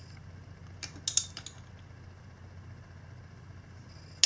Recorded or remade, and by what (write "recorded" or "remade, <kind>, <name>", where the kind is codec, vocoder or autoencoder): recorded